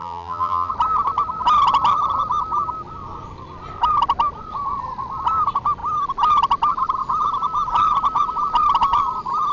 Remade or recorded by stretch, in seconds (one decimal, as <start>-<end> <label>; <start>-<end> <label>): 0.0-0.7 remade; 0.7-9.5 recorded